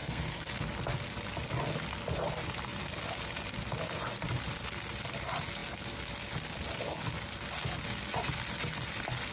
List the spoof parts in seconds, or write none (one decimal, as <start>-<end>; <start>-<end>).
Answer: 0.0-0.5